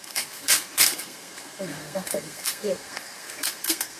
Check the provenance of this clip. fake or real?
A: fake